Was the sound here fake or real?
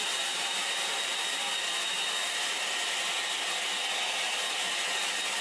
real